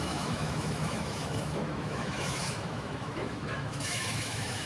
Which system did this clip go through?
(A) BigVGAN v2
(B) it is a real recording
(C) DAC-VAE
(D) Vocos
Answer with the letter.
C